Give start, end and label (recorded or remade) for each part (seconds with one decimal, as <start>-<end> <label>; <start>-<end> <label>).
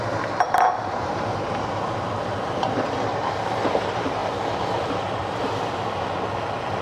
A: 0.0-4.2 remade; 4.2-6.8 recorded